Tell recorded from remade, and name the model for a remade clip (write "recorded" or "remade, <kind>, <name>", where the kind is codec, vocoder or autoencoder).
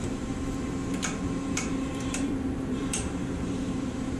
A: remade, vocoder, BigVGAN v2